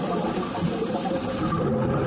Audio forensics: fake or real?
real